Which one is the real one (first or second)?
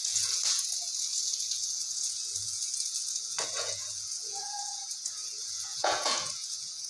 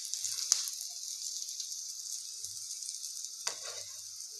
second